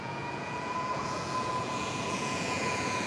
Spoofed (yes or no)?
yes